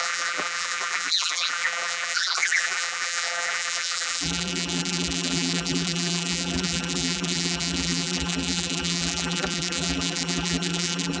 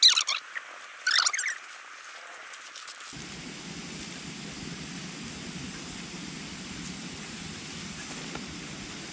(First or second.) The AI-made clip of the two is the first